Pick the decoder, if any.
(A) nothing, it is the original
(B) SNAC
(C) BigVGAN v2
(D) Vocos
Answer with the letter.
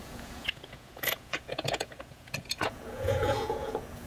D